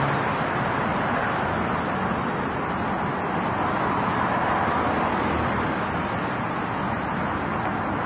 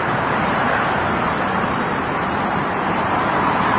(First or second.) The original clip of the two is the first